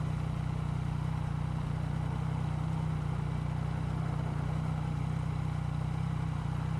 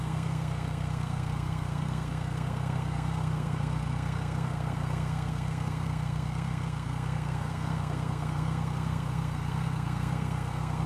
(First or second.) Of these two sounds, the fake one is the second